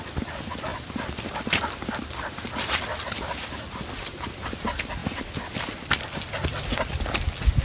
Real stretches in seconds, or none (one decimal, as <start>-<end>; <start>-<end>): 0.0-7.6